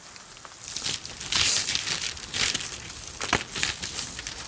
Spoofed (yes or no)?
no